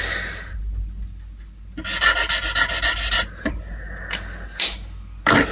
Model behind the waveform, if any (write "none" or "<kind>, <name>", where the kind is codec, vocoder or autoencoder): none